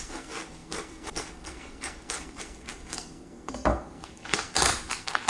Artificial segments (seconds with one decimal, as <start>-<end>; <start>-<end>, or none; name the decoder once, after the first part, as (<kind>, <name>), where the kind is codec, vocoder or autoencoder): 0.0-5.3 (codec, SNAC)